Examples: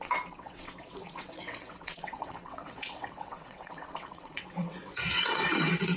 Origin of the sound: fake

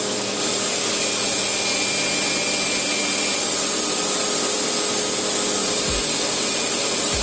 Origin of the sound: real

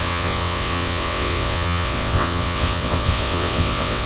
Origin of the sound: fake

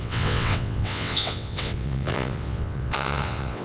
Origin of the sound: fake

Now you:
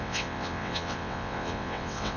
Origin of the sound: fake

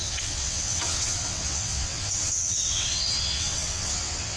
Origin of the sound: fake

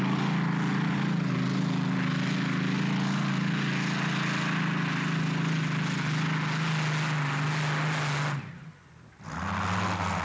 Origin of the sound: real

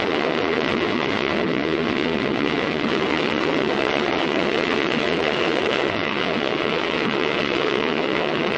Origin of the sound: fake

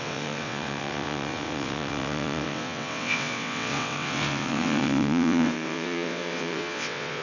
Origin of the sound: fake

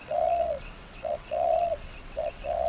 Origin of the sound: fake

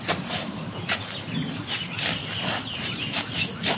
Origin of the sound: real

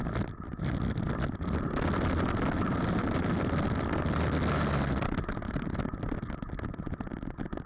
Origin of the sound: real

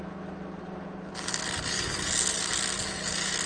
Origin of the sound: real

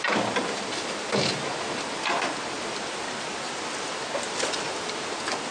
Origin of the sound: real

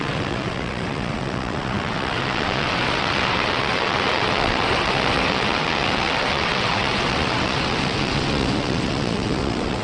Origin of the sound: fake